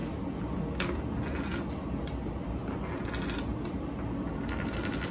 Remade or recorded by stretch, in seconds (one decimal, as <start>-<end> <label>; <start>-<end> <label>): 0.0-5.1 recorded